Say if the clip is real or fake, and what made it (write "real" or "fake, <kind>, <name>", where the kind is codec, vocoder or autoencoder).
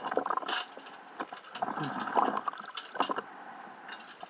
real